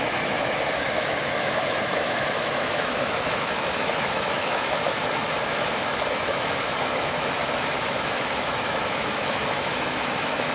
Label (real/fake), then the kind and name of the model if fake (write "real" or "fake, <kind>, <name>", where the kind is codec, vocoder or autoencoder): fake, autoencoder, DAC-VAE